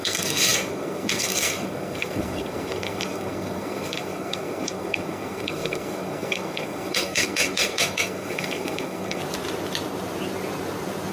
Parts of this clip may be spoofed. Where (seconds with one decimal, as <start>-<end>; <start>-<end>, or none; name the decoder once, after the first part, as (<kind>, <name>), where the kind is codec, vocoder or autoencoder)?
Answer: 0.0-9.2 (codec, SNAC)